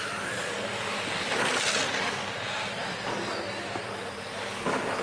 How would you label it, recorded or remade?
recorded